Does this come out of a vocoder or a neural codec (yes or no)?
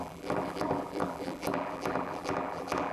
yes